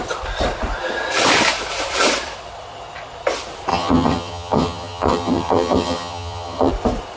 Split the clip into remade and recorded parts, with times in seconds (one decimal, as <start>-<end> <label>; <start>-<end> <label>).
0.0-3.7 recorded; 3.7-6.7 remade; 6.7-7.2 recorded